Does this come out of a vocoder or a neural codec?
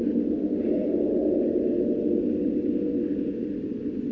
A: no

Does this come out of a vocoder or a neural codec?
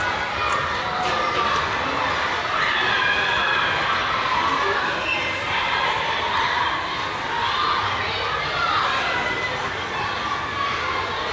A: no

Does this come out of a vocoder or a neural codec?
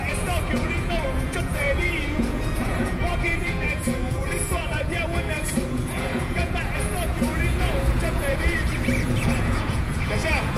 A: yes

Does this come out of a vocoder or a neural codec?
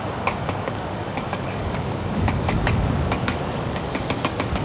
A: yes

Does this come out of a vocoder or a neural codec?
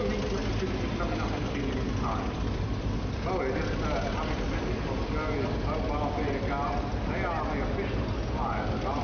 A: no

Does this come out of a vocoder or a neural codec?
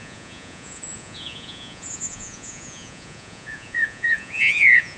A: yes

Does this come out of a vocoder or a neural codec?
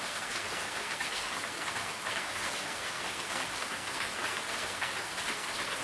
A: yes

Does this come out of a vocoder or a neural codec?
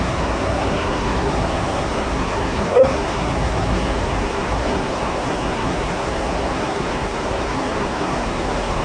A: yes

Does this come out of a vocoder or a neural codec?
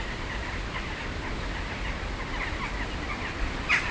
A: no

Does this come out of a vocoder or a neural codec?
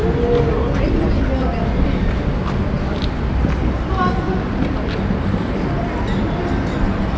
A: no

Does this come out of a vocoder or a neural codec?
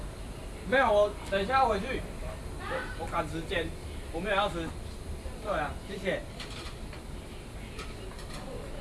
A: no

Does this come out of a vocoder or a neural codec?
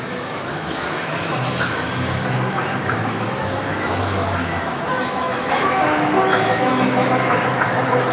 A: yes